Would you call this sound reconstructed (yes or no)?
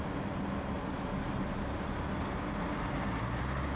no